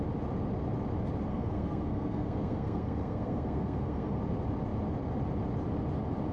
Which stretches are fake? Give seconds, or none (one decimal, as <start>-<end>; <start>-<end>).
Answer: 1.3-4.2